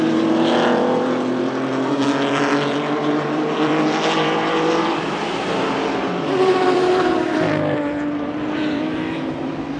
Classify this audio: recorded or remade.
remade